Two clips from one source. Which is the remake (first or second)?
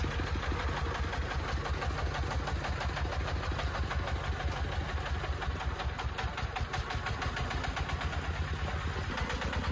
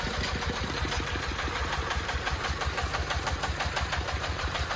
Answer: second